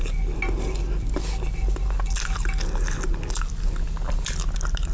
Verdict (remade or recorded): recorded